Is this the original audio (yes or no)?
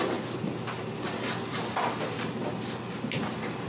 yes